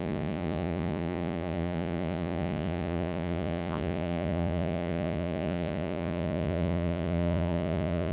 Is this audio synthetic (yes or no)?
yes